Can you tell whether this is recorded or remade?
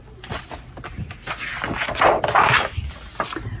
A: recorded